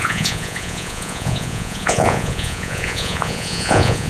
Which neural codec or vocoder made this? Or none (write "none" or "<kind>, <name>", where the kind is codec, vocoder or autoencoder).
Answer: vocoder, Vocos